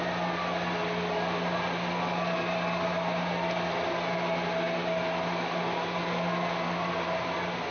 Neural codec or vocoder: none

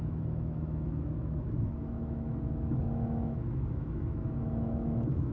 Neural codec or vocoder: autoencoder, DAC-VAE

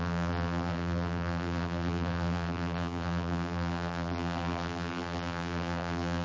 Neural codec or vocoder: vocoder, BigVGAN v2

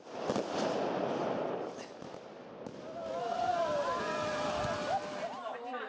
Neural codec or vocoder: none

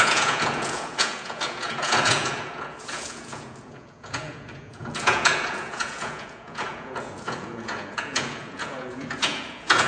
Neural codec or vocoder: vocoder, Vocos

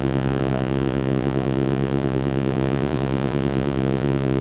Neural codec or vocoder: vocoder, Vocos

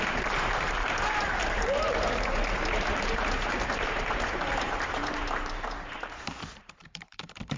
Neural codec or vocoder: vocoder, BigVGAN v2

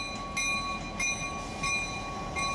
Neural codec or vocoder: none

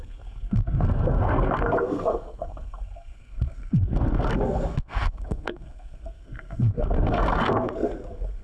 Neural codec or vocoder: codec, SNAC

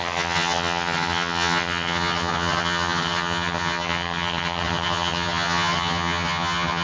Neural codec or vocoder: vocoder, HiFi-GAN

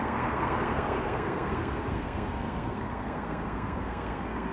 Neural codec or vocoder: codec, SNAC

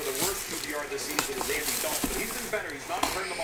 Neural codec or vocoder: none